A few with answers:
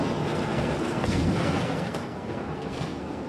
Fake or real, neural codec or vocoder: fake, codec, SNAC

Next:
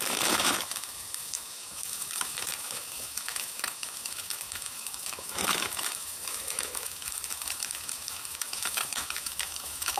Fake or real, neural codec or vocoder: fake, autoencoder, DAC-VAE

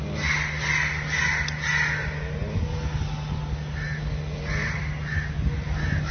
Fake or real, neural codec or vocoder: real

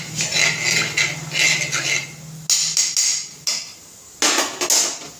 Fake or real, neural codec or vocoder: real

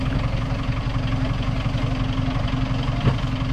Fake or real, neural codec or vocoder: real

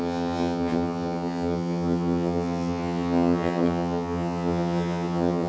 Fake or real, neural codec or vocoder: fake, vocoder, HiFi-GAN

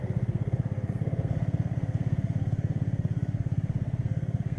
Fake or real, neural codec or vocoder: fake, codec, SNAC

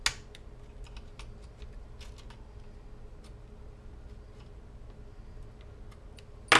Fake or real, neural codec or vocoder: real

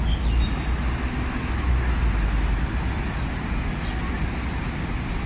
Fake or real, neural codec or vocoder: real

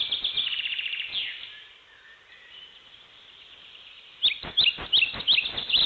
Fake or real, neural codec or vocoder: real